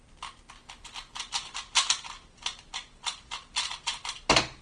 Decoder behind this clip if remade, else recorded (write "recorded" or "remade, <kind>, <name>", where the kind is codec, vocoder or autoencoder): recorded